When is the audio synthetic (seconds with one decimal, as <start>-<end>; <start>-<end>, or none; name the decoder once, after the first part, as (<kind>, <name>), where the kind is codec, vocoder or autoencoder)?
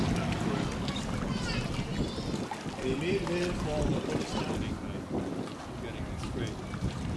none